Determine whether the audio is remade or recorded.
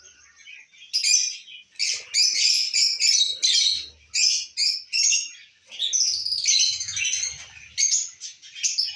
recorded